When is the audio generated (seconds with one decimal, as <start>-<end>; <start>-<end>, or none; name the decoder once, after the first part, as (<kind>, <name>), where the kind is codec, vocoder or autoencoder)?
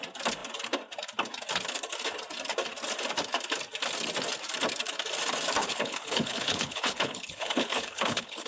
5.6-8.5 (codec, HILCodec)